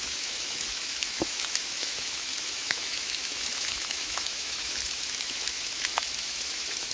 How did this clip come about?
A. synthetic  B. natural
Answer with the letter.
A